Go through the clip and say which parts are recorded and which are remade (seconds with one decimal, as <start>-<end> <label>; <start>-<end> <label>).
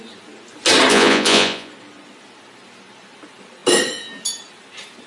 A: 0.0-0.9 recorded; 0.9-1.7 remade; 1.7-5.1 recorded